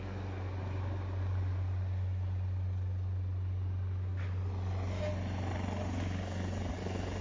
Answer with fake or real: real